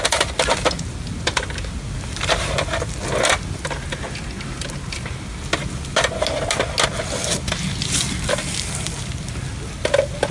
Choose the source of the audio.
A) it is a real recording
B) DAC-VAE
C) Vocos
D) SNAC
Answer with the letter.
A